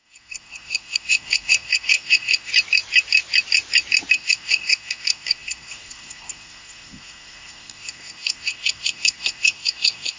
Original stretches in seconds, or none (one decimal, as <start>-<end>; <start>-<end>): 2.5-4.1